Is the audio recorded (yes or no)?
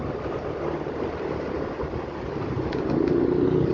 yes